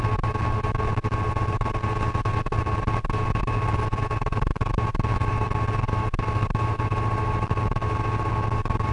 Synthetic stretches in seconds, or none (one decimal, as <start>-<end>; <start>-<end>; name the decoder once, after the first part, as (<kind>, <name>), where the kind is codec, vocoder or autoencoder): none